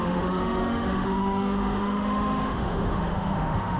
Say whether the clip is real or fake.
fake